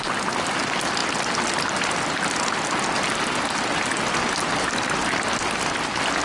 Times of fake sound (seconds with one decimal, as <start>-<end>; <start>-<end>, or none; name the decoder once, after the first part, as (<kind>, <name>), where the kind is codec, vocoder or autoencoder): none